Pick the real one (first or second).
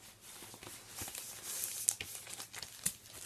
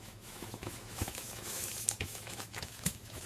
first